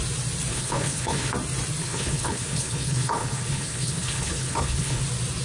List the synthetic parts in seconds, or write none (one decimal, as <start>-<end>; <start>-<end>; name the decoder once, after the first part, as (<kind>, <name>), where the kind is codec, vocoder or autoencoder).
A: 0.5-1.3 (codec, HILCodec); 1.8-5.0